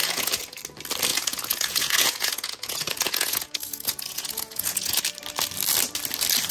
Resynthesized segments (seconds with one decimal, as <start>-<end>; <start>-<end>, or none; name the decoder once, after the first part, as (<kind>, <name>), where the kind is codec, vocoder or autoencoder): 0.0-0.6 (vocoder, Vocos); 1.1-5.0